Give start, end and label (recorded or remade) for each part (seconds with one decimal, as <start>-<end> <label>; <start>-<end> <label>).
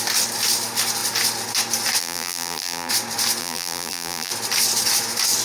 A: 0.0-2.0 recorded; 2.0-2.9 remade; 2.9-3.4 recorded; 3.4-4.3 remade; 4.3-5.4 recorded